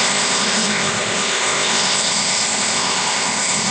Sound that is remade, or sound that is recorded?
remade